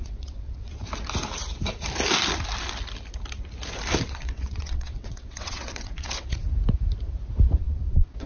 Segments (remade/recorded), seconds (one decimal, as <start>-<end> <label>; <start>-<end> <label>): 0.0-0.7 remade; 0.7-4.0 recorded; 4.0-6.4 remade; 6.4-7.6 recorded; 7.6-8.3 remade